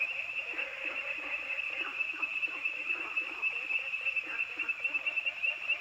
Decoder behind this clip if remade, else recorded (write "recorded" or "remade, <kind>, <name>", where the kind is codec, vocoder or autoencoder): remade, vocoder, BigVGAN v2